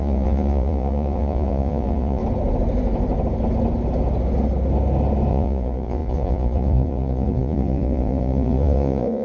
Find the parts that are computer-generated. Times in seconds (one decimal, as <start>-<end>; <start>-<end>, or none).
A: 0.0-2.2; 5.3-9.2